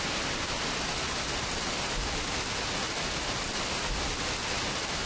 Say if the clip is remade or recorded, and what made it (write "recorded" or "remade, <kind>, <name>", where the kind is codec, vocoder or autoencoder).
recorded